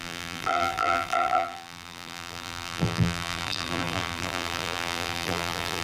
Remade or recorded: remade